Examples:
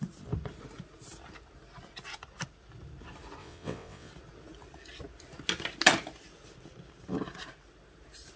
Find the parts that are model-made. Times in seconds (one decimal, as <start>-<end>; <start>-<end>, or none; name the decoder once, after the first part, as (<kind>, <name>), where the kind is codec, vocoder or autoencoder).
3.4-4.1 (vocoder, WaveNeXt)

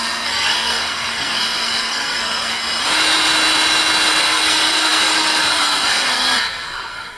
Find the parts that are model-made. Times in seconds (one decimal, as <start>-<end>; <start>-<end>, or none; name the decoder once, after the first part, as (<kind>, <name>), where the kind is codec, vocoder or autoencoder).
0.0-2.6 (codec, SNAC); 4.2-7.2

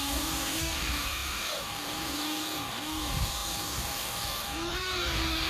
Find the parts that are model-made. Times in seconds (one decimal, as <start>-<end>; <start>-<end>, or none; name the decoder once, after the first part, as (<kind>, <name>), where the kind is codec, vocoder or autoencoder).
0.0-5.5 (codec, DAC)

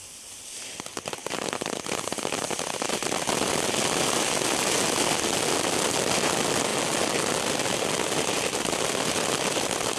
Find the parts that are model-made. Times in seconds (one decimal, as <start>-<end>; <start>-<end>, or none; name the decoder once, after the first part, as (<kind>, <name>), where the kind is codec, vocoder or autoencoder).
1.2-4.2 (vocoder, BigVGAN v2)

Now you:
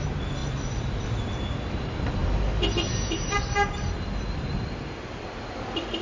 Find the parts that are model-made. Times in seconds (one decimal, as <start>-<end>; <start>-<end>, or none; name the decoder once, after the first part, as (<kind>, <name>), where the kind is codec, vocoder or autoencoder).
none

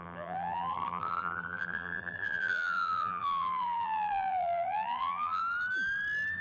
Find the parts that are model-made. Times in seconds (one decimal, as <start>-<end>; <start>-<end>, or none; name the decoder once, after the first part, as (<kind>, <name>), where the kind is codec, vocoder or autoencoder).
0.0-5.4 (vocoder, BigVGAN v2)

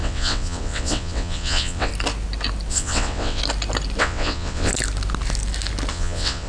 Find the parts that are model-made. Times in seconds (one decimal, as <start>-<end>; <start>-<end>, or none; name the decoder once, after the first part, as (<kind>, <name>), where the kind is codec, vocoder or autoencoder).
0.0-1.9 (vocoder, WaveNeXt); 2.7-3.4; 4.0-4.7; 5.9-6.5

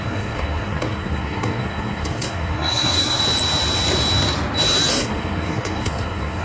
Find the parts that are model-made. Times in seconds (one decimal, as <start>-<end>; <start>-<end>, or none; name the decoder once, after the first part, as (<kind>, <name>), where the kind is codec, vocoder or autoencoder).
0.0-3.2 (codec, SNAC); 4.9-6.4